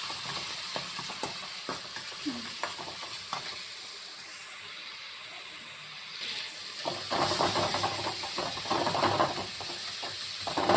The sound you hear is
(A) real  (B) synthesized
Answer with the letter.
A